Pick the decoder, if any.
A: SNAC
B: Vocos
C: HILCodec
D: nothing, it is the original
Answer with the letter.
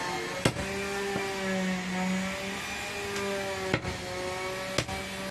D